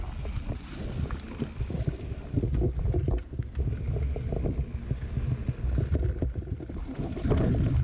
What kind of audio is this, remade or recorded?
recorded